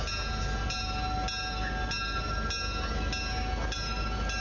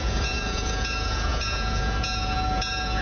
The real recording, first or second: first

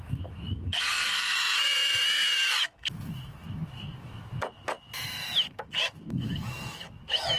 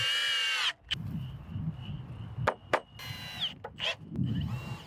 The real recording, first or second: second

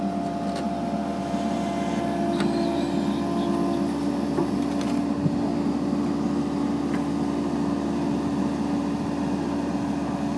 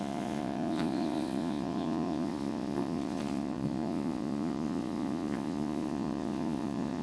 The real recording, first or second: first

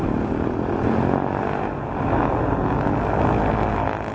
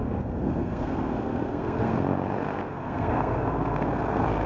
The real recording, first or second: first